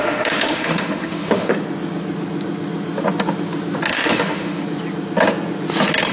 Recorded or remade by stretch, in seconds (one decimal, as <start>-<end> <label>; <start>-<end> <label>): 0.0-1.5 remade; 1.5-3.9 recorded; 3.9-4.6 remade; 4.6-6.1 recorded